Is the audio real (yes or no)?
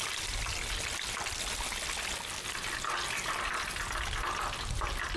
yes